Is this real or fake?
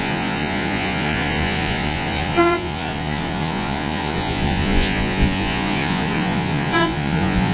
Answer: fake